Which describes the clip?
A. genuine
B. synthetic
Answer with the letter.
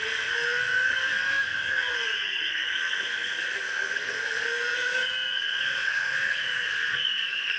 B